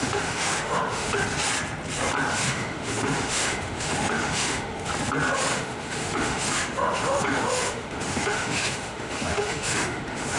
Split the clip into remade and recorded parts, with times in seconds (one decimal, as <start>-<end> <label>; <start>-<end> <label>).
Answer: 0.0-1.2 remade; 1.2-2.3 recorded; 2.3-4.9 remade; 4.9-5.5 recorded; 5.5-10.4 remade